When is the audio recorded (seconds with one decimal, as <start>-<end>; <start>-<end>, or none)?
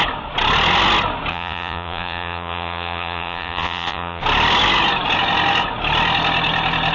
0.0-1.3; 4.2-6.9